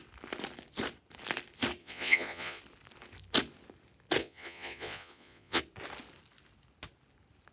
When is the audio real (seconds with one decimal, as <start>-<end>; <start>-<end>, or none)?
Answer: 0.0-1.8; 2.6-4.2; 5.6-7.5